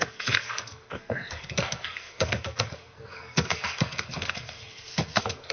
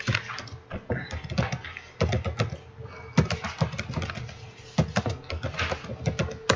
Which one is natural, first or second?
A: second